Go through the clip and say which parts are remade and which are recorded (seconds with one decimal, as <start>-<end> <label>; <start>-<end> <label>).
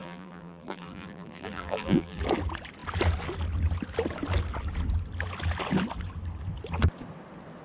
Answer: 0.0-2.2 remade; 2.2-7.6 recorded